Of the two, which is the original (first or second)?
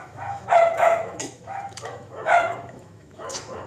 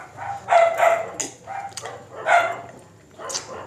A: second